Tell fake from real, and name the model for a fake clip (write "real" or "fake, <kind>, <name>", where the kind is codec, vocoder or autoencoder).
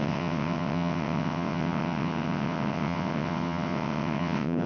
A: fake, vocoder, WaveNeXt